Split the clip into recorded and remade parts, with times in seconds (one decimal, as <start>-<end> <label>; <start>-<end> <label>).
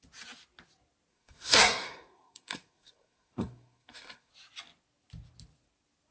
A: 0.0-1.1 recorded; 1.1-4.3 remade; 4.3-6.1 recorded